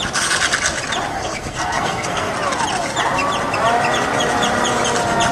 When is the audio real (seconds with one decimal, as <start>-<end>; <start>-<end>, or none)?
0.0-1.1; 2.3-5.3

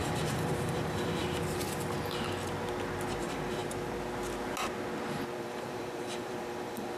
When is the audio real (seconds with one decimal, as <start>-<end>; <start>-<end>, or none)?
1.2-3.2; 3.6-5.4

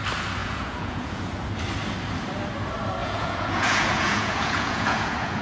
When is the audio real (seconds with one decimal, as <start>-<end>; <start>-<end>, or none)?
0.0-0.4; 1.2-3.0